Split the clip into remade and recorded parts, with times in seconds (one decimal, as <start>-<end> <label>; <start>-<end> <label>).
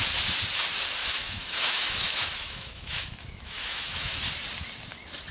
0.0-1.0 recorded; 1.0-4.2 remade; 4.2-5.3 recorded